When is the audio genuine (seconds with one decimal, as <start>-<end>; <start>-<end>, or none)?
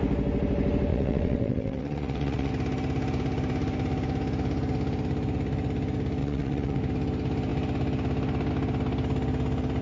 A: 0.0-0.9; 2.5-6.2; 6.8-9.8